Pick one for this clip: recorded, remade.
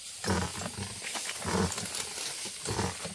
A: recorded